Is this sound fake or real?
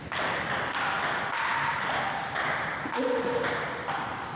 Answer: real